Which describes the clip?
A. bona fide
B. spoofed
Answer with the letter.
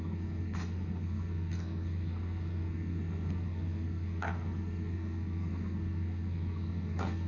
B